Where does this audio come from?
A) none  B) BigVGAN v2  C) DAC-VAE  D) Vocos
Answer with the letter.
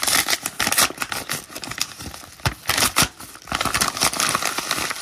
A